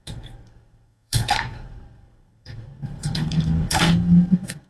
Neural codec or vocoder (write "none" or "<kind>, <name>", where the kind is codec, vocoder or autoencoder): codec, SNAC